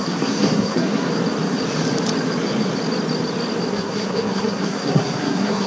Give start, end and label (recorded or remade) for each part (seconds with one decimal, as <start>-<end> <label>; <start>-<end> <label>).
0.0-1.1 remade; 1.1-3.7 recorded; 3.7-5.7 remade

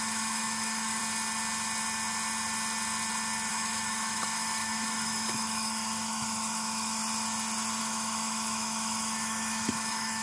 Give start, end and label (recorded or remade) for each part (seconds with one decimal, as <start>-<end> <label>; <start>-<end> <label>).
0.0-1.0 remade; 1.0-3.5 recorded; 3.5-7.0 remade; 7.0-7.8 recorded; 7.8-10.2 remade

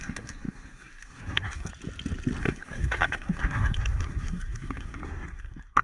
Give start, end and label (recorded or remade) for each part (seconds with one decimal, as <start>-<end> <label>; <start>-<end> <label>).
0.0-1.7 remade; 1.7-2.4 recorded; 2.4-5.8 remade

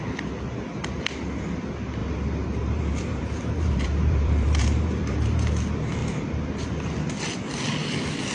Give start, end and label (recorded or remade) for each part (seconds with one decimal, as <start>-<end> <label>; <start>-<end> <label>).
0.0-2.0 recorded; 2.0-5.5 remade; 5.5-8.3 recorded

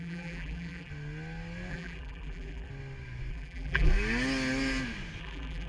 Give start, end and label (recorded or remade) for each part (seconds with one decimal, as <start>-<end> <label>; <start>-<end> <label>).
0.0-0.9 remade; 0.9-1.7 recorded; 1.7-2.7 remade; 2.7-3.3 recorded; 3.3-3.9 remade; 3.9-5.2 recorded; 5.2-5.7 remade

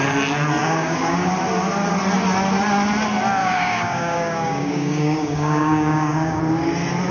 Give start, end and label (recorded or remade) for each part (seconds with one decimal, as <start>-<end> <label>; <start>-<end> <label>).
0.0-0.6 recorded; 0.6-1.3 remade; 1.3-3.4 recorded; 3.4-6.4 remade; 6.4-7.1 recorded

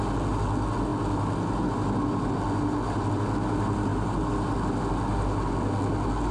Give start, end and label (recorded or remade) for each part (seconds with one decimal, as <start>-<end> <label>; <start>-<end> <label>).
0.0-6.3 recorded

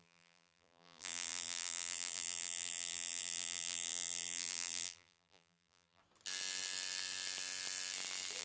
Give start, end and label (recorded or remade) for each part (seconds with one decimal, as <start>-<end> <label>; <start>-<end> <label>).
0.0-6.0 remade; 6.0-8.4 recorded